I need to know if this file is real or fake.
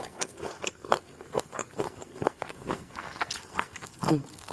fake